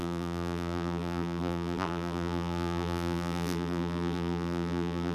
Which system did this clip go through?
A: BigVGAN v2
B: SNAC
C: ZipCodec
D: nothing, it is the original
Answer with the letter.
A